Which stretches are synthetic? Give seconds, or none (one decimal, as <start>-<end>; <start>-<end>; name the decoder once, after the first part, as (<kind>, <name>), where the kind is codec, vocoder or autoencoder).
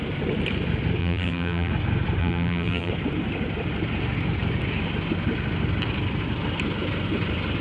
1.0-1.7 (vocoder, BigVGAN v2); 2.2-2.9